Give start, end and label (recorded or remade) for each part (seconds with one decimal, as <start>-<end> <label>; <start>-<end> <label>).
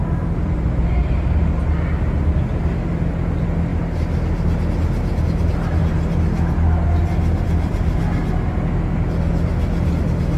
0.0-10.4 recorded